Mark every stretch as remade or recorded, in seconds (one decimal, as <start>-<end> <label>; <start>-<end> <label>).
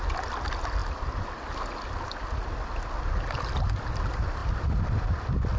0.0-5.6 recorded